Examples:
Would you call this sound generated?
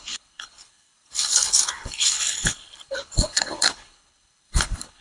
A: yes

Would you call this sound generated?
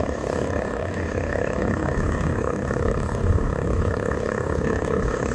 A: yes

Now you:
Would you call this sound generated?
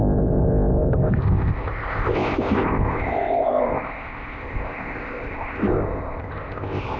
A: yes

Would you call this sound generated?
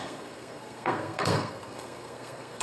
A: yes